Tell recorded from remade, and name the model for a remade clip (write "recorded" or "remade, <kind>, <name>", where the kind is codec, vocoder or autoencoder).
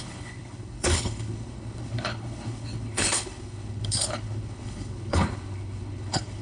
remade, codec, HILCodec